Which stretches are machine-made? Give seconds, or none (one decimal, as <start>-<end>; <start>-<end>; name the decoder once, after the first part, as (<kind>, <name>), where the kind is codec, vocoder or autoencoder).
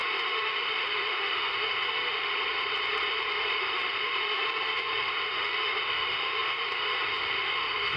0.0-2.3 (autoencoder, DAC-VAE); 3.6-8.0